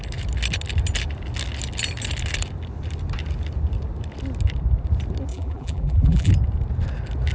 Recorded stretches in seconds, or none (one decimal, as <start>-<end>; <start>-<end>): 0.0-5.3; 6.3-7.3